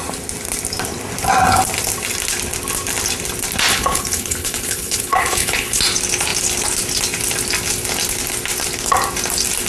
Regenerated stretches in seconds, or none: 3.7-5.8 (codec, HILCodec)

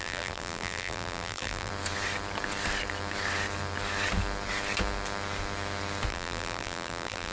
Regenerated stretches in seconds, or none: 0.0-1.7 (vocoder, BigVGAN v2); 6.1-7.3

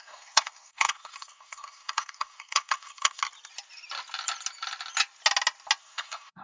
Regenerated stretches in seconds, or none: 0.0-3.2 (codec, SNAC); 5.8-6.4

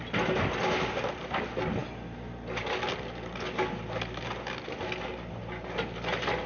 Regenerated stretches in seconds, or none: none